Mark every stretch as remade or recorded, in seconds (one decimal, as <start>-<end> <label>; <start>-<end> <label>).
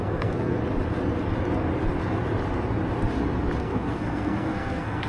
0.0-0.5 remade; 0.5-3.6 recorded; 3.6-5.1 remade